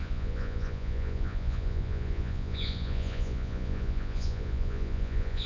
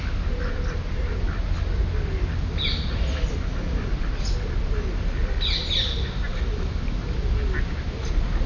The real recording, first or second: second